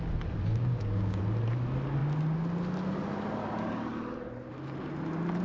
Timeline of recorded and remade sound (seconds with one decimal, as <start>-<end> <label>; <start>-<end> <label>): 0.0-0.5 recorded; 0.5-1.2 remade; 1.2-5.4 recorded